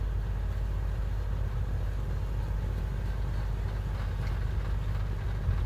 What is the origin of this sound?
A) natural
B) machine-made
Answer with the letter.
A